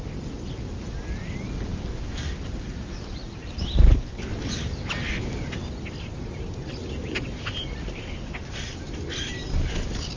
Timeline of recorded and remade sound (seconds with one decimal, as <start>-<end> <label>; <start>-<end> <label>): 0.0-10.2 recorded